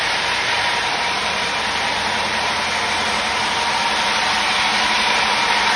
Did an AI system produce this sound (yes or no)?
yes